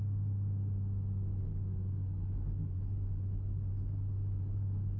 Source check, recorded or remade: recorded